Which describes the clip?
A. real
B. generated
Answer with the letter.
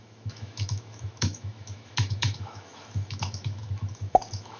B